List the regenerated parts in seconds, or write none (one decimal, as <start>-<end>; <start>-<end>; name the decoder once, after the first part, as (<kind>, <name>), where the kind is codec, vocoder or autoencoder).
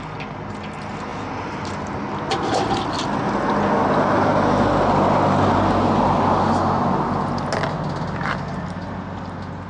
none